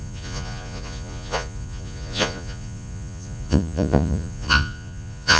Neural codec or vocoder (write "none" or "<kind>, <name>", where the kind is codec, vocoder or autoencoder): vocoder, Vocos